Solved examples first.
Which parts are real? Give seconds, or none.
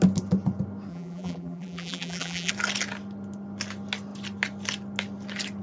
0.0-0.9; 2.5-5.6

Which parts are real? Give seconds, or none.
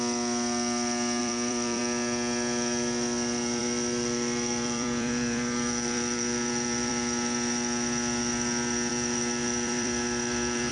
0.0-1.2; 1.8-3.6; 6.9-8.9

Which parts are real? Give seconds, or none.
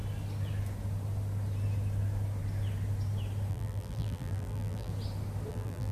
0.0-3.5; 4.9-5.5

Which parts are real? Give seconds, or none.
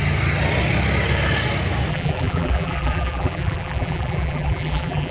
0.0-1.9